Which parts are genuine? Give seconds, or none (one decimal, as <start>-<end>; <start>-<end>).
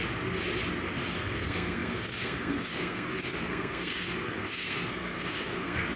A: 0.0-1.2